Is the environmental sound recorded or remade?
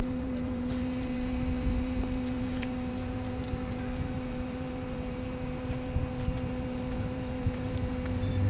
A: remade